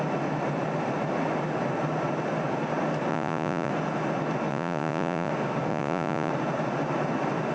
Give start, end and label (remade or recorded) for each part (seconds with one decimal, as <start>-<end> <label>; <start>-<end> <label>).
0.0-3.1 recorded; 3.1-3.7 remade; 3.7-4.5 recorded; 4.5-5.3 remade; 5.3-5.7 recorded; 5.7-6.3 remade; 6.3-7.5 recorded